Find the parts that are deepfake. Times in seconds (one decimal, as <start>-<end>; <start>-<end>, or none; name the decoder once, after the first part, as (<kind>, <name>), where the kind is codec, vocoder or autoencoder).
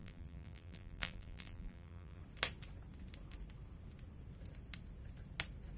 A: 0.0-2.2 (vocoder, BigVGAN v2)